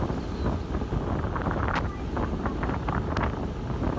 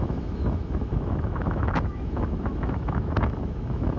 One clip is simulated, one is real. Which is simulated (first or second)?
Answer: second